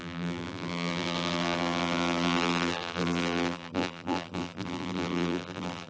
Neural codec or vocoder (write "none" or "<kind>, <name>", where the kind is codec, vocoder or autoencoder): vocoder, BigVGAN v2